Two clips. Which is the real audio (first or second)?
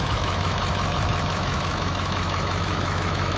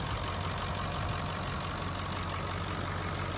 second